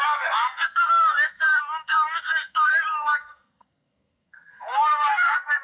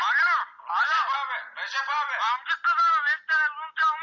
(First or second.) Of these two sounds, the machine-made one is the first